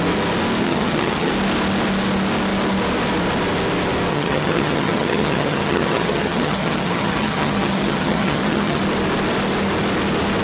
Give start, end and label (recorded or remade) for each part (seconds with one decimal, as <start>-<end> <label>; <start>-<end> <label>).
0.0-0.6 recorded; 0.6-1.3 remade; 1.3-4.1 recorded; 4.1-8.8 remade; 8.8-10.4 recorded